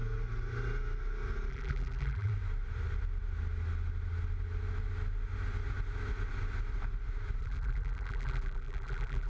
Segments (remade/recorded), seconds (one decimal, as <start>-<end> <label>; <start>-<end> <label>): 0.0-1.5 recorded; 1.5-2.3 remade; 2.3-7.4 recorded; 7.4-9.3 remade